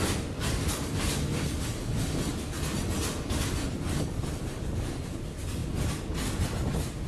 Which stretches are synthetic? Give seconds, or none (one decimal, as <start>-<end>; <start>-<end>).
none